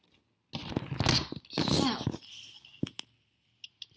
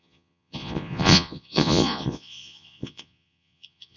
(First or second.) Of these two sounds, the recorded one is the first